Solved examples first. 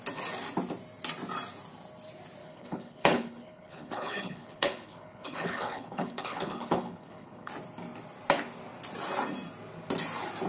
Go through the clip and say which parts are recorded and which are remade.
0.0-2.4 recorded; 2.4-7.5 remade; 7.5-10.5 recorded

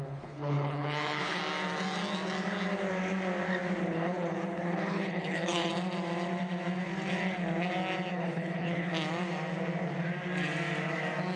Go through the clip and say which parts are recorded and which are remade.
0.0-1.4 remade; 1.4-3.8 recorded; 3.8-5.7 remade; 5.7-8.1 recorded; 8.1-8.9 remade; 8.9-11.4 recorded

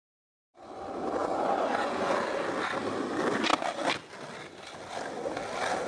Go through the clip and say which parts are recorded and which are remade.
0.0-1.2 recorded; 1.2-2.2 remade; 2.2-5.9 recorded

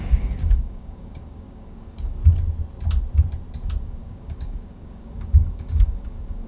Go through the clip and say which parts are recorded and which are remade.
0.0-2.2 remade; 2.2-3.8 recorded; 3.8-6.5 remade

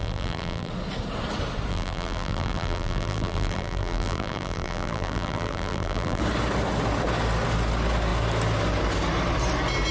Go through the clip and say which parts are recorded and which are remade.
0.0-0.7 remade; 0.7-1.7 recorded; 1.7-6.2 remade; 6.2-9.9 recorded

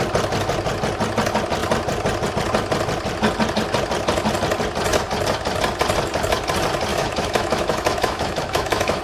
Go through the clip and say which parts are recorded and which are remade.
0.0-6.9 recorded; 6.9-9.0 remade

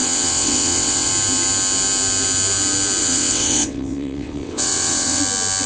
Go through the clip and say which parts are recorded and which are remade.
0.0-1.1 remade; 1.1-3.0 recorded; 3.0-5.2 remade; 5.2-5.7 recorded